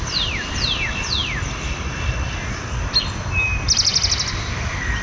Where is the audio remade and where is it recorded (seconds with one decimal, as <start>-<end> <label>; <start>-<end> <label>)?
0.0-5.0 recorded